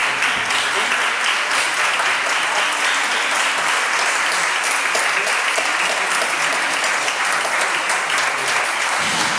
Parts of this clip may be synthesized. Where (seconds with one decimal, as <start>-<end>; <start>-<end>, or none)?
0.0-0.7